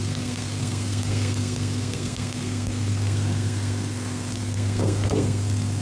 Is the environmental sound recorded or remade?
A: remade